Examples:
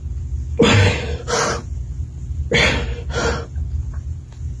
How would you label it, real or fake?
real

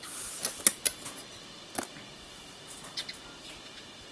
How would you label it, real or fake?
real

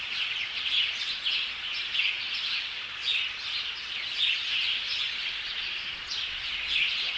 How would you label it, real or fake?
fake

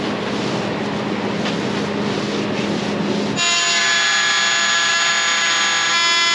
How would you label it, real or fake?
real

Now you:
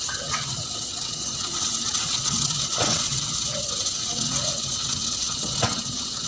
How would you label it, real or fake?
fake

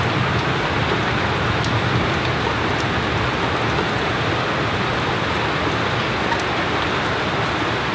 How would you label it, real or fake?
real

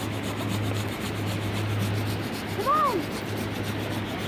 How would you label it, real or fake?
real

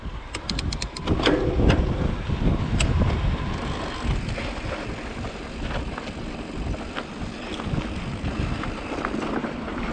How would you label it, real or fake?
real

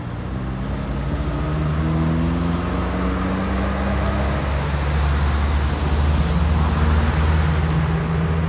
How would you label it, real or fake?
real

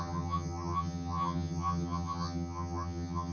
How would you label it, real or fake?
fake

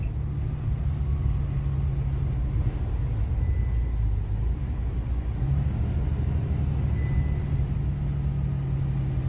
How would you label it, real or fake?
real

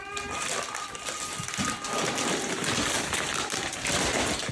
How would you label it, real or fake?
real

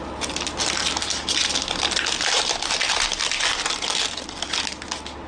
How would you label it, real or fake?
real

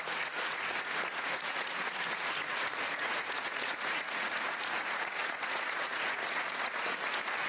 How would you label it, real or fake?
fake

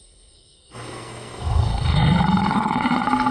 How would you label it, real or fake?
fake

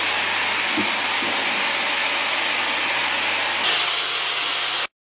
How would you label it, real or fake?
real